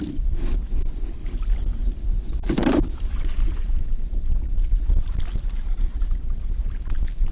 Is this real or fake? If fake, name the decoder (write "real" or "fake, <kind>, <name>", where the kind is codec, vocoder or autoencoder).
fake, vocoder, BigVGAN v2